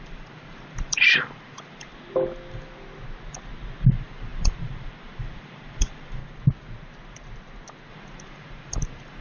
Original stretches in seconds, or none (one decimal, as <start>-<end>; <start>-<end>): 1.9-3.8; 6.2-7.9